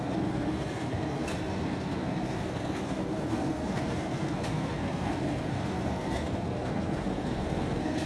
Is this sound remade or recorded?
remade